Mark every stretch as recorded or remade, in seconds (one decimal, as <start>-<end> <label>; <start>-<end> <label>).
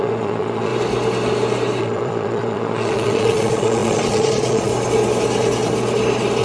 0.0-0.7 remade; 0.7-1.8 recorded; 1.8-4.7 remade; 4.7-6.4 recorded